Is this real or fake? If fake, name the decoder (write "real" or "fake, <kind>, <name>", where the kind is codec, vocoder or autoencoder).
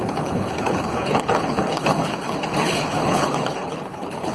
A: fake, codec, HILCodec